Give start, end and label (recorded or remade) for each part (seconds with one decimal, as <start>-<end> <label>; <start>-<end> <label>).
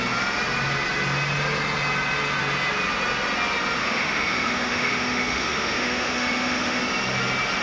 0.0-3.8 recorded; 3.8-6.8 remade; 6.8-7.6 recorded